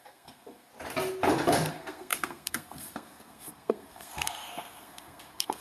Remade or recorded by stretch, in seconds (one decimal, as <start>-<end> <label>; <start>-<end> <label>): 0.0-0.7 remade; 0.7-1.7 recorded; 1.7-5.6 remade